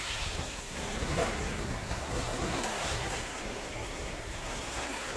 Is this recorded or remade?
remade